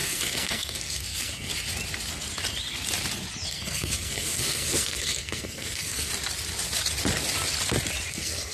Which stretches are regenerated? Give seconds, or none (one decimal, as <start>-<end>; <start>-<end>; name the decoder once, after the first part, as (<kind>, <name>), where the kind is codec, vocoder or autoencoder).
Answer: 0.0-1.5 (codec, SNAC); 3.5-6.1; 8.1-8.5